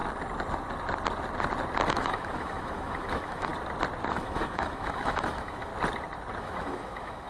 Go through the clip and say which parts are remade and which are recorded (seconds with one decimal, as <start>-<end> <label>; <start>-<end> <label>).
0.0-1.9 recorded; 1.9-3.5 remade; 3.5-4.1 recorded; 4.1-5.7 remade; 5.7-6.4 recorded; 6.4-7.3 remade